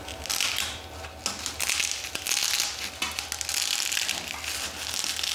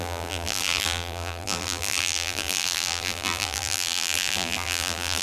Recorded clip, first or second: first